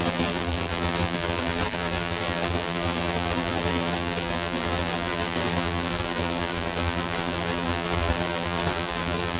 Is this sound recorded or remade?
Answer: remade